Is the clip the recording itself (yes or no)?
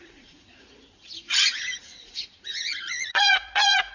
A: no